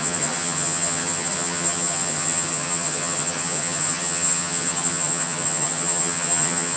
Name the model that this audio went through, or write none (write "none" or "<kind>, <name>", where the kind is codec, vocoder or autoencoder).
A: vocoder, HiFi-GAN